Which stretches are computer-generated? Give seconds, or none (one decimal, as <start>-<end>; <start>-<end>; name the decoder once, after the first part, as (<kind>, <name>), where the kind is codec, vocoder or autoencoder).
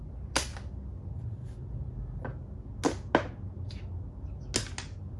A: none